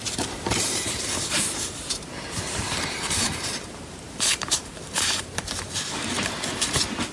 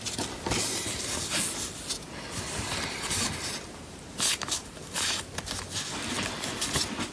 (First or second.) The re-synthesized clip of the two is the first